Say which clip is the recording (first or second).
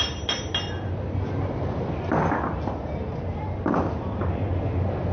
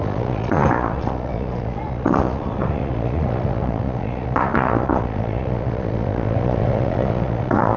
first